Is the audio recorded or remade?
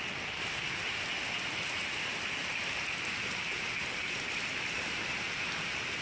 recorded